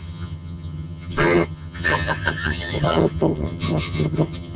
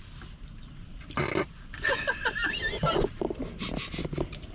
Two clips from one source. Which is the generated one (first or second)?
first